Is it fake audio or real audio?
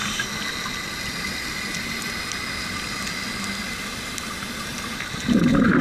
real